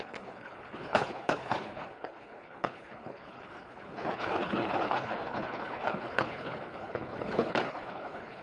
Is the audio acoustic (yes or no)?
no